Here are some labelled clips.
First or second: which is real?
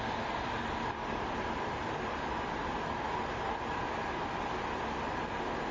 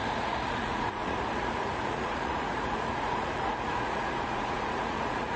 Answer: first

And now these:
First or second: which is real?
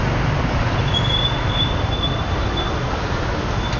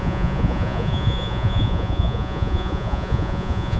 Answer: first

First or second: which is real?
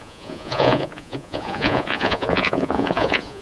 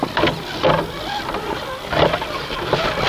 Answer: second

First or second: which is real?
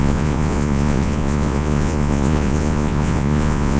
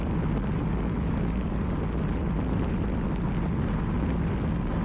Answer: second